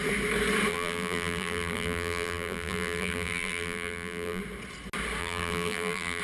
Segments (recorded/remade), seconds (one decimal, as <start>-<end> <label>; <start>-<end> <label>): 0.0-0.7 recorded; 0.7-4.4 remade; 4.4-5.2 recorded; 5.2-6.2 remade

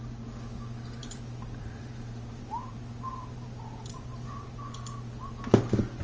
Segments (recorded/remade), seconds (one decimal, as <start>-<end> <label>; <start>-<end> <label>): 0.0-1.0 recorded; 1.0-4.6 remade; 4.6-6.0 recorded

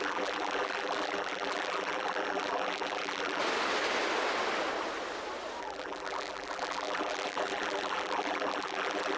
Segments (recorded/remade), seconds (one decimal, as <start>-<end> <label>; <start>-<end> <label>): 0.0-3.4 remade; 3.4-5.6 recorded; 5.6-9.2 remade

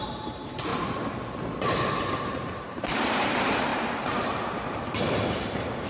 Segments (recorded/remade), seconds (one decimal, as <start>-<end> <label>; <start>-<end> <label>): 0.0-0.7 remade; 0.7-1.5 recorded; 1.5-5.9 remade

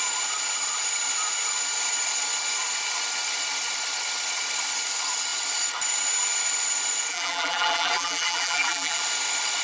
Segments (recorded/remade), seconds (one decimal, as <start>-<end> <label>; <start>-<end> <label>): 0.0-7.1 recorded; 7.1-9.0 remade; 9.0-9.6 recorded